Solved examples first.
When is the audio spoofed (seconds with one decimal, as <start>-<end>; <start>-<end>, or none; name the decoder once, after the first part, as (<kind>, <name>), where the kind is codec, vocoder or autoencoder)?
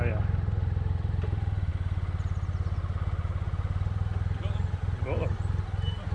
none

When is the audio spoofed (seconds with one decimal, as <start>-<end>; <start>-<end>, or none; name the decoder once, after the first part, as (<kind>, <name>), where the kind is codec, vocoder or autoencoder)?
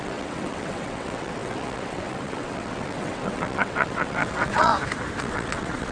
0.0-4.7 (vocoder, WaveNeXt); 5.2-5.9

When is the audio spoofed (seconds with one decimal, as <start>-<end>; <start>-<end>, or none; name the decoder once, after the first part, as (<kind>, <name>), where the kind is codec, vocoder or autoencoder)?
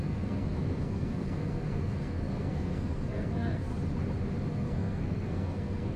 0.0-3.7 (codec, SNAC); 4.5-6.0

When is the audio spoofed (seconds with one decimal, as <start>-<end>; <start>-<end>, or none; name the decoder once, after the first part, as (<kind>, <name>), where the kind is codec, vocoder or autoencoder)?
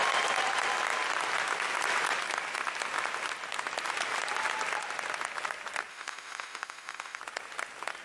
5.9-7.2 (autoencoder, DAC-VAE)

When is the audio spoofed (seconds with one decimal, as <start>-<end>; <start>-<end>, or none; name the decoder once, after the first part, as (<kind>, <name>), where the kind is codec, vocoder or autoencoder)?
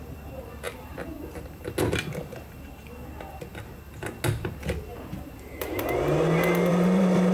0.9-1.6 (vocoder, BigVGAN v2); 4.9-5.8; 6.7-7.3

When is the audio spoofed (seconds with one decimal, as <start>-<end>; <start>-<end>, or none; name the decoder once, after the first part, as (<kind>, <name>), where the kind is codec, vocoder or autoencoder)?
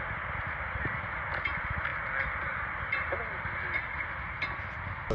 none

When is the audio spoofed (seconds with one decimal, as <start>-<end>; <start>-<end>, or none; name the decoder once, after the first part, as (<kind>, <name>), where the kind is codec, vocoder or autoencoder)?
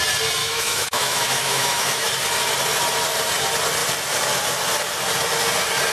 0.4-2.1 (autoencoder, DAC-VAE)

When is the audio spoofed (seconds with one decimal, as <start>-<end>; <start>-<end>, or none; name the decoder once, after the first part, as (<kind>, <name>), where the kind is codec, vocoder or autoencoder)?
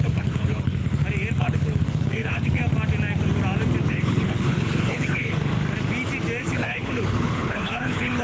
0.0-0.8 (codec, HILCodec); 1.4-2.6; 3.9-5.5; 6.4-8.2